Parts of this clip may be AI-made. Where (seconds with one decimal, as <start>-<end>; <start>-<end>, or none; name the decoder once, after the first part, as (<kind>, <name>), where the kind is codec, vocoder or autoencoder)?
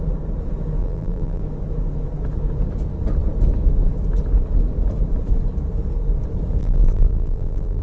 0.8-1.4 (vocoder, BigVGAN v2); 6.6-7.8